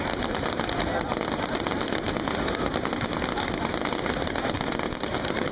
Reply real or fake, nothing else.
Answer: real